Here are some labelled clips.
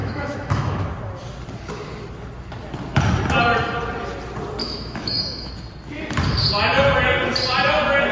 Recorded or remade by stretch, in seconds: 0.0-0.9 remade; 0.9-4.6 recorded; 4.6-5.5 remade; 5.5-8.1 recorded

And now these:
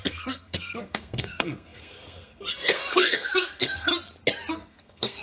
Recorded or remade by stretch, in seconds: 0.0-3.9 remade; 3.9-4.5 recorded; 4.5-5.2 remade

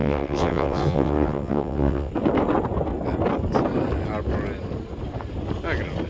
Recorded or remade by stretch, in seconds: 0.0-2.1 remade; 2.1-6.1 recorded

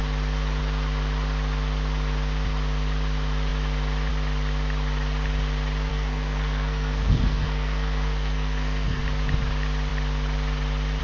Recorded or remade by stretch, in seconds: 0.0-5.9 recorded; 5.9-9.0 remade; 9.0-11.0 recorded

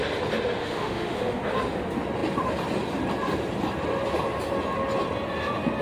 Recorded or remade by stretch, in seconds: 0.0-0.6 recorded; 0.6-1.4 remade; 1.4-5.8 recorded

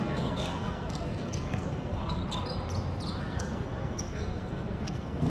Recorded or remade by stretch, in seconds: 0.0-2.2 remade; 2.2-3.2 recorded; 3.2-5.3 remade

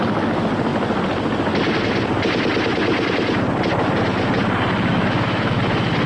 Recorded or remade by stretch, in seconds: 0.0-4.9 recorded; 4.9-5.6 remade; 5.6-6.1 recorded